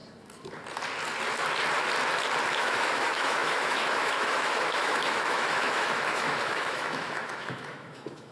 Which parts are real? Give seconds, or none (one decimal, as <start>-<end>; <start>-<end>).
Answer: 0.0-2.6